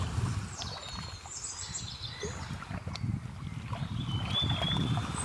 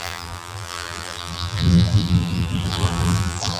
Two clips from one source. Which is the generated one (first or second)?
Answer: second